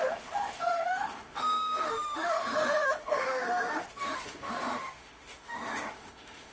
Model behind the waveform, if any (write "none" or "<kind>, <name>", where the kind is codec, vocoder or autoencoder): autoencoder, DAC-VAE